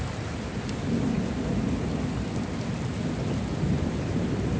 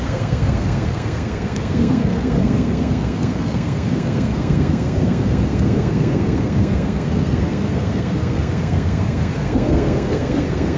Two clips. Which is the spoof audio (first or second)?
second